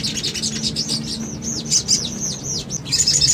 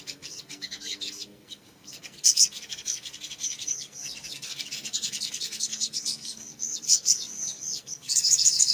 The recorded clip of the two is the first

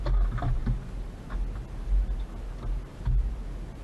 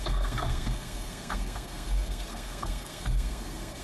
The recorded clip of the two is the first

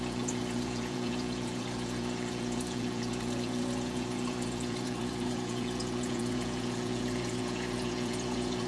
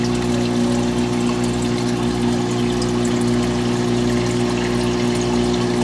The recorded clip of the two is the second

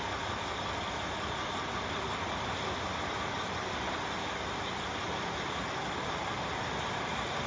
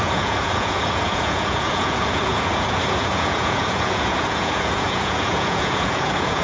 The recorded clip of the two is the first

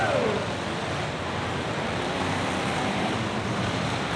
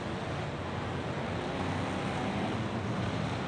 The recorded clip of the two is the second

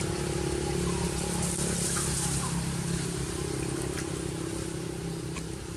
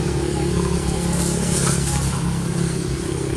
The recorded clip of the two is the first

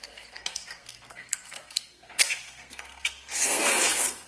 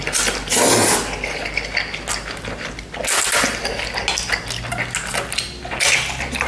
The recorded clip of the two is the second